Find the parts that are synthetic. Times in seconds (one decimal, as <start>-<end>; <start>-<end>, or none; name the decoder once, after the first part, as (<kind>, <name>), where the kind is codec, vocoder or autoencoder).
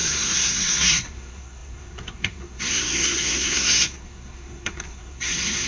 0.0-5.7 (codec, SNAC)